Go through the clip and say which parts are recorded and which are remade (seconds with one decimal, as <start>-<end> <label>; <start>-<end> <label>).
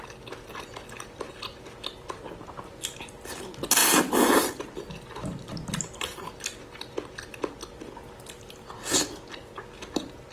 0.0-10.3 recorded